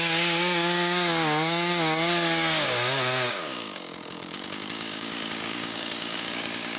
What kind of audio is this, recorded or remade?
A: remade